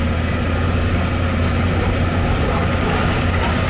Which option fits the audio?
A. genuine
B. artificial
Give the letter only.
A